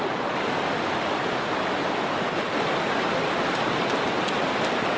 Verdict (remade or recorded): recorded